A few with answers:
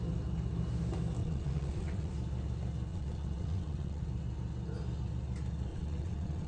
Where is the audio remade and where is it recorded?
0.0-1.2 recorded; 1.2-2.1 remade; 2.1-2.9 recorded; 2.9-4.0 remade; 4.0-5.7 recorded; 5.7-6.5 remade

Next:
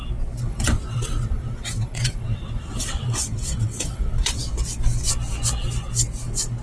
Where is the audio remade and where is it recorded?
0.0-0.4 recorded; 0.4-4.4 remade; 4.4-6.6 recorded

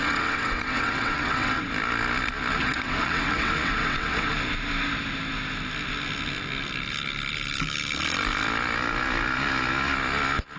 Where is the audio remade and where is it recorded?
0.0-1.7 remade; 1.7-2.6 recorded; 2.6-4.3 remade; 4.3-10.6 recorded

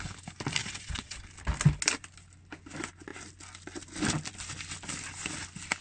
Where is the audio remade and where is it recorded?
0.0-0.6 recorded; 0.6-1.2 remade; 1.2-5.8 recorded

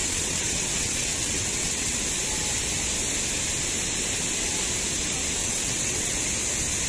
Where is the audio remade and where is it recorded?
0.0-2.0 remade; 2.0-5.4 recorded; 5.4-6.2 remade; 6.2-6.9 recorded